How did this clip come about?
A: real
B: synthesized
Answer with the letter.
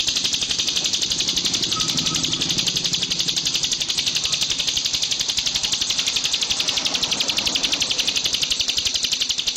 A